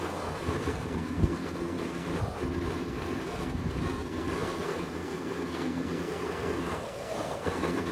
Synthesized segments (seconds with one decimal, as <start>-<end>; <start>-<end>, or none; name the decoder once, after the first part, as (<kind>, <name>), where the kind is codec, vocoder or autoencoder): 0.0-2.1 (codec, SNAC); 2.9-7.9